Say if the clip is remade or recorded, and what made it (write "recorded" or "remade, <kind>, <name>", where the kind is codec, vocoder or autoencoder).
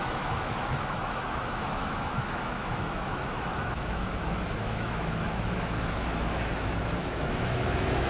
remade, autoencoder, DAC-VAE